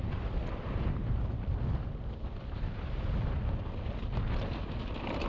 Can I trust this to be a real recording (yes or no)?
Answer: yes